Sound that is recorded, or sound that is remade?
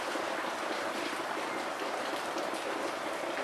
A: recorded